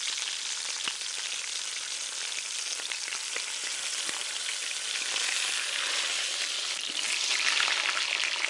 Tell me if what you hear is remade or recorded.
recorded